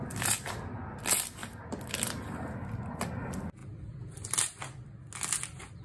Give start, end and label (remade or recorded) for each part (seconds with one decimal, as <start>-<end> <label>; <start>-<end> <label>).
0.0-3.6 recorded; 3.6-4.4 remade; 4.4-5.8 recorded